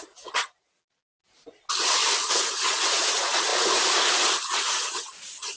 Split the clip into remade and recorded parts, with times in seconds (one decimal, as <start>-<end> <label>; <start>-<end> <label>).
0.0-1.2 remade; 1.2-1.9 recorded; 1.9-5.6 remade

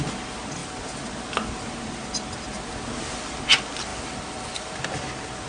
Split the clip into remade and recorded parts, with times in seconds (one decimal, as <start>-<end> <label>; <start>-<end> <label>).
0.0-3.9 recorded; 3.9-5.1 remade; 5.1-5.5 recorded

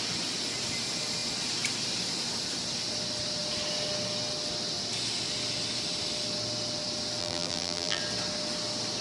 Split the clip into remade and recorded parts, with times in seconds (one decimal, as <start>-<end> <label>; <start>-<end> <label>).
0.0-7.2 recorded; 7.2-8.0 remade; 8.0-9.0 recorded

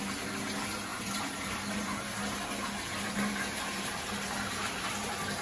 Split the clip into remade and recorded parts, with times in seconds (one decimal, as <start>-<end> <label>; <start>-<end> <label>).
0.0-5.4 remade